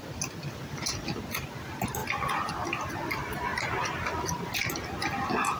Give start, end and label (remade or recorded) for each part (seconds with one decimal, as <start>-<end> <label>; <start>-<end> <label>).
0.0-5.6 recorded